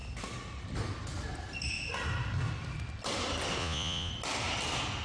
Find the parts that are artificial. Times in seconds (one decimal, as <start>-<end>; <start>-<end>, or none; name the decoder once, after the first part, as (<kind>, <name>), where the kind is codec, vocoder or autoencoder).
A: 3.6-4.1 (vocoder, Vocos)